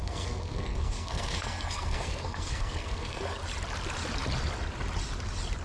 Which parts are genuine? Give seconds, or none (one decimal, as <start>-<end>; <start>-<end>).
3.4-5.6